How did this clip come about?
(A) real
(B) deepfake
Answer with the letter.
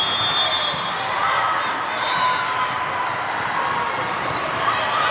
A